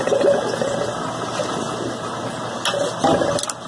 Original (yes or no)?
yes